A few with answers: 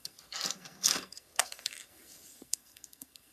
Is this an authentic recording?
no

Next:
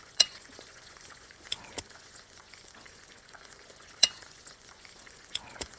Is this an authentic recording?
no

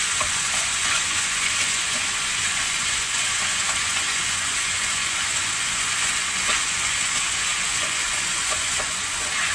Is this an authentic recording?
no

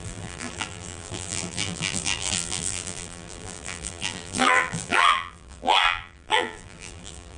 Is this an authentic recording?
no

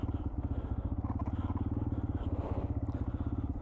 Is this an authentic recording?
yes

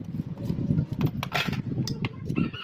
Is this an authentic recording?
yes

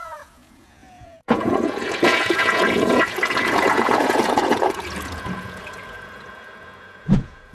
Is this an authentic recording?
no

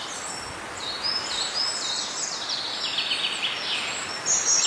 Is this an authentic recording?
yes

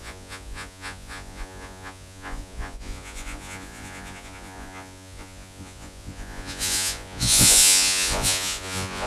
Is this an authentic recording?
no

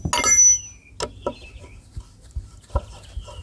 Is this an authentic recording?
yes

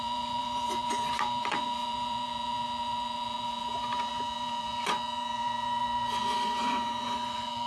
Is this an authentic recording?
no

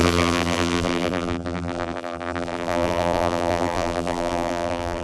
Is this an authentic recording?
no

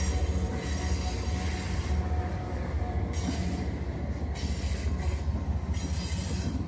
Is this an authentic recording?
yes